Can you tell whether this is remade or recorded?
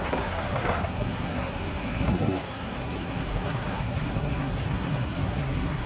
remade